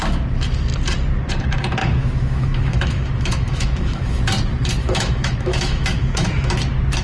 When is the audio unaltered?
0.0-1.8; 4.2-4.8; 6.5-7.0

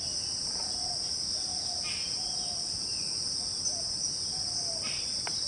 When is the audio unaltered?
0.0-5.5

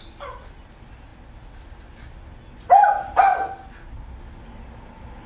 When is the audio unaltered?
0.0-5.3

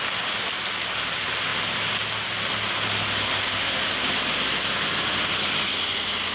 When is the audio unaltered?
0.0-6.3

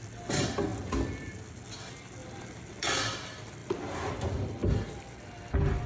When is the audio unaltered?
0.0-5.9